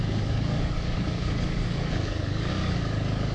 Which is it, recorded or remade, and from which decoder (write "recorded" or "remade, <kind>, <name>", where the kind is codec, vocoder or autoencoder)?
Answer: remade, codec, DAC